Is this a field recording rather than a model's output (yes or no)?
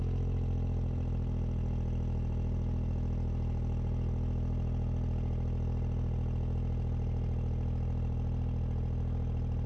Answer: yes